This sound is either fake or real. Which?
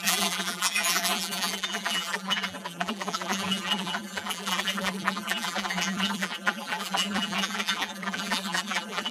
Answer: fake